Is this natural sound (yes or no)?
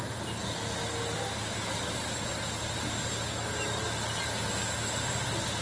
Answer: yes